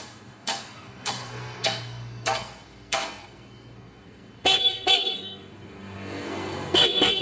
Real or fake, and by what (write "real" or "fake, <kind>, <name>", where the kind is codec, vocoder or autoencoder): fake, codec, SNAC